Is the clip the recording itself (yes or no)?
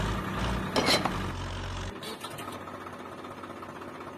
yes